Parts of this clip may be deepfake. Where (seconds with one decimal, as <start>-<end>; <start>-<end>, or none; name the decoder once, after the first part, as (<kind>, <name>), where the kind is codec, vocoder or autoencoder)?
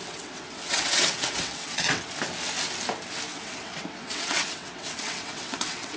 0.0-2.1 (vocoder, WaveNeXt); 3.3-6.0